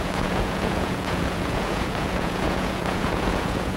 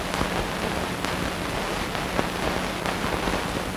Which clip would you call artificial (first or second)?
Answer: first